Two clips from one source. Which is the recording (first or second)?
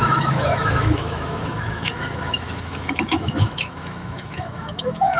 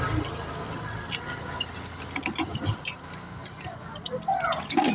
second